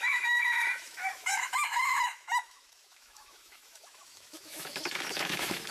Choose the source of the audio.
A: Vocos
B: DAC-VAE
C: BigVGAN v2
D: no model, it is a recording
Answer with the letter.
B